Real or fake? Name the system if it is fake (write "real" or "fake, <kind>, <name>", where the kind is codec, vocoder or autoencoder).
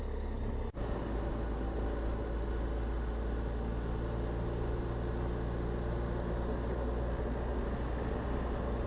real